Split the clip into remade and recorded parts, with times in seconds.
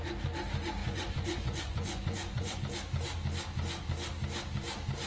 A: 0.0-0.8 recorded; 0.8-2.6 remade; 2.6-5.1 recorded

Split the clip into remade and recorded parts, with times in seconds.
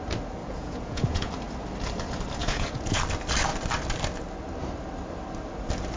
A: 0.0-0.4 recorded; 0.4-1.3 remade; 1.3-2.4 recorded; 2.4-3.0 remade; 3.0-6.0 recorded